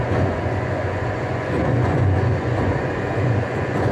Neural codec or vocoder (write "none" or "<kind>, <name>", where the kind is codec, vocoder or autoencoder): vocoder, Vocos